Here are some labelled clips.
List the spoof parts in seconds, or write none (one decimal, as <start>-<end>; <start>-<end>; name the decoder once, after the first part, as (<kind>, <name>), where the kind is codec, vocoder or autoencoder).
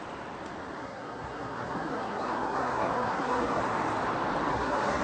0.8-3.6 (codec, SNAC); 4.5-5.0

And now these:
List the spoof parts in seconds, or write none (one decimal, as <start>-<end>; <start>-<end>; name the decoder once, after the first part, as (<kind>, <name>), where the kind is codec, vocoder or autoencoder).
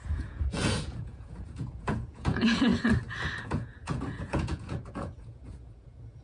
0.0-2.7 (vocoder, Vocos); 3.4-6.2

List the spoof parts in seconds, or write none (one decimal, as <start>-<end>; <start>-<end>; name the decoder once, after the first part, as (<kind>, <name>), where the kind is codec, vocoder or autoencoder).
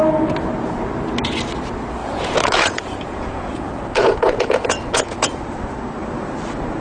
2.0-5.4 (vocoder, Vocos)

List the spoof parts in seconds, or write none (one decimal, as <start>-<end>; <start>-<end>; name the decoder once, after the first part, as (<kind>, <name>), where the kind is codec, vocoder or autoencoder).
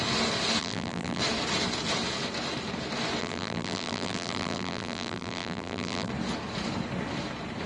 0.6-1.2 (vocoder, BigVGAN v2); 3.2-6.1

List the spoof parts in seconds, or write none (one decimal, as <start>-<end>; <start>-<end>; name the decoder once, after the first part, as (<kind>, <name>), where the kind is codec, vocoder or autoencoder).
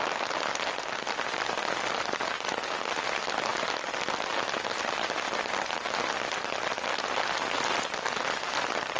none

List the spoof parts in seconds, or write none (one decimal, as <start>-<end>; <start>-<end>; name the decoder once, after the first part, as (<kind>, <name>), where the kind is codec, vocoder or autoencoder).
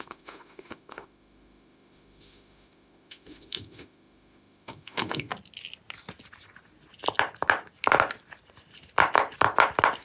0.0-5.3 (autoencoder, DAC-VAE)